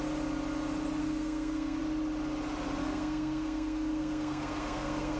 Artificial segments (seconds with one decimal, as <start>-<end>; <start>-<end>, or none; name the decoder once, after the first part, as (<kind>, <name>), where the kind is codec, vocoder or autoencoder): 1.0-1.8 (codec, SNAC); 2.8-5.2